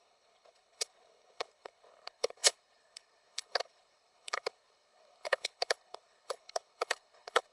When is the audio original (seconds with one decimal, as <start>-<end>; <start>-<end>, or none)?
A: none